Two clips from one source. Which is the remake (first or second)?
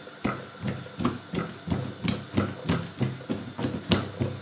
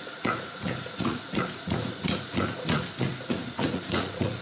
second